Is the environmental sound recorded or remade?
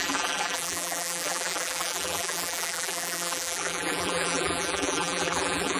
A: remade